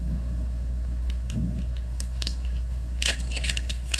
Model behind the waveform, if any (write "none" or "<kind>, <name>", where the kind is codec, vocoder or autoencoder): codec, SNAC